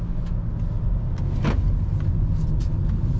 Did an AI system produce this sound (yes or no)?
no